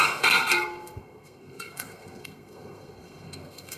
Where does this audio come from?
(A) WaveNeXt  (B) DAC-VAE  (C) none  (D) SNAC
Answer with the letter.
D